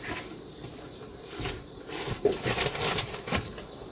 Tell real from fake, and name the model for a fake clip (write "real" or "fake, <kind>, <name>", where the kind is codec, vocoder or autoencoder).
fake, vocoder, BigVGAN v2